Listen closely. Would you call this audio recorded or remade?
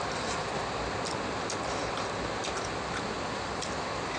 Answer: recorded